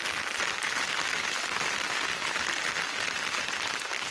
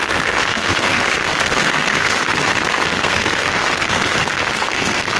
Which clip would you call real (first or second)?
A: first